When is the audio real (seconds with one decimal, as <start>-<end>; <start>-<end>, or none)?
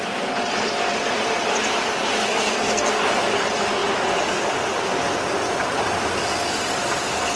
0.0-2.3; 3.0-7.4